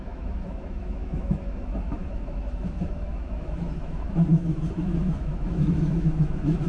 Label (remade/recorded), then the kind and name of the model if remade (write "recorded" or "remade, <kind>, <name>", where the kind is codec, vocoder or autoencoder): remade, autoencoder, DAC-VAE